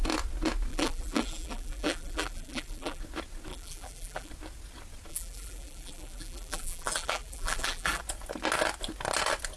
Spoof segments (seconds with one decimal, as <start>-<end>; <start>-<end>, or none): 0.7-3.0; 3.5-4.3; 5.1-8.0